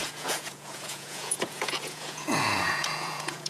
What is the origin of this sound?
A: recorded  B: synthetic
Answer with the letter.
B